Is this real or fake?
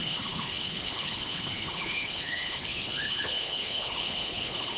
fake